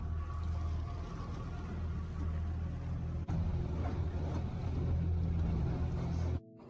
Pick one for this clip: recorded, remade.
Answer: recorded